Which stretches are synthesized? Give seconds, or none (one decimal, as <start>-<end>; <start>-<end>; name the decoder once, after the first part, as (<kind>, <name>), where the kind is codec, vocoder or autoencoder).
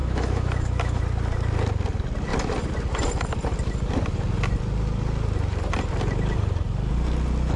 0.0-1.0 (autoencoder, DAC-VAE)